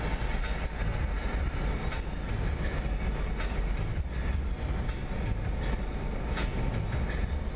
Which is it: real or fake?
real